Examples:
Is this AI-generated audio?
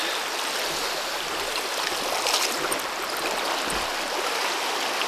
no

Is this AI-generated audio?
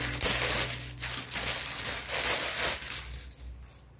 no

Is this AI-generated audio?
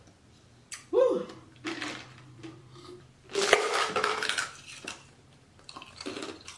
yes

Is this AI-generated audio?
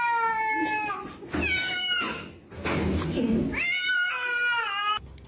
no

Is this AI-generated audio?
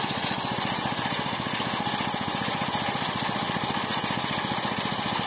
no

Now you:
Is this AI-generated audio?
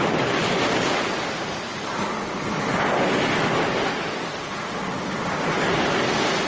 no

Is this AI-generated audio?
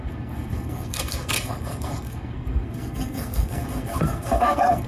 yes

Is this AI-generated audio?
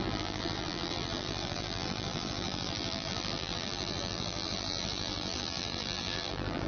yes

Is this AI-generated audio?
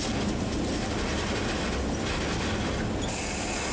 no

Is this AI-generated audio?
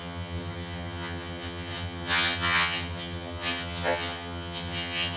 yes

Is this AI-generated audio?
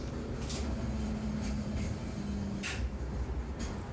no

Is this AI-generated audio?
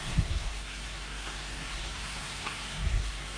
yes